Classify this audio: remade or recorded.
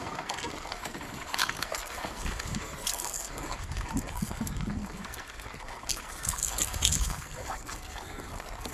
remade